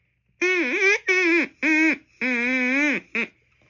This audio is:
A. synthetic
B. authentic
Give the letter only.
B